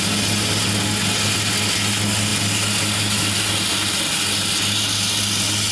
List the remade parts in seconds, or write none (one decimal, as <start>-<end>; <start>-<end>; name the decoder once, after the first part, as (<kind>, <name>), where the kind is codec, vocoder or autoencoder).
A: none